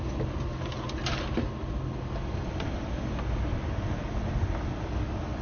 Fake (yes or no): no